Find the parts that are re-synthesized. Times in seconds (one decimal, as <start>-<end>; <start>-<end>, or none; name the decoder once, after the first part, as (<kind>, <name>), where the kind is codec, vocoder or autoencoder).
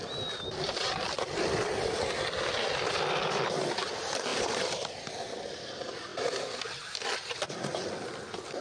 4.3-4.9 (vocoder, BigVGAN v2); 6.1-6.8